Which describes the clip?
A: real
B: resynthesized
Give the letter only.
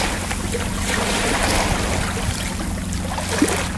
A